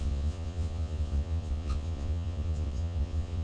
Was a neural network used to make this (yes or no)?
yes